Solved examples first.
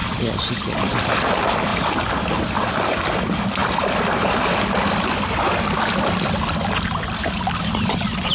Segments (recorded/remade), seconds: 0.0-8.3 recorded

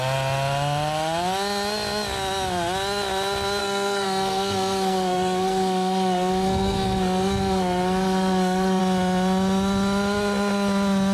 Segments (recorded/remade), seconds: 0.0-3.6 recorded; 3.6-8.8 remade; 8.8-11.1 recorded

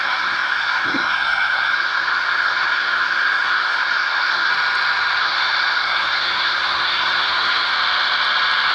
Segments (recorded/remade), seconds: 0.0-4.5 remade; 4.5-5.2 recorded; 5.2-7.7 remade; 7.7-8.7 recorded

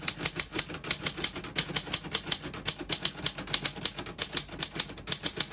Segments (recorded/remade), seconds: 0.0-0.5 remade; 0.5-3.8 recorded; 3.8-5.5 remade

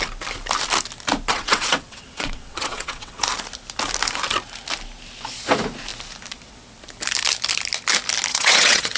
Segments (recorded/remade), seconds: 0.0-1.3 recorded; 1.3-3.2 remade; 3.2-8.3 recorded; 8.3-9.0 remade